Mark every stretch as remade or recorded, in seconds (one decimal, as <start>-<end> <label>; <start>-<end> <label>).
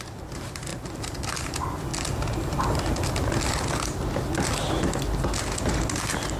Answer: 0.0-1.9 remade; 1.9-5.6 recorded; 5.6-6.4 remade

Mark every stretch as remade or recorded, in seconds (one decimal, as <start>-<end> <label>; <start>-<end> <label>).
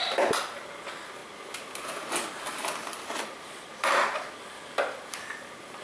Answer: 0.0-5.8 recorded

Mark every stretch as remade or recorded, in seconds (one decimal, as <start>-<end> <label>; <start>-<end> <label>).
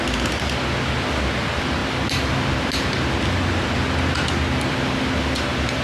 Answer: 0.0-5.8 recorded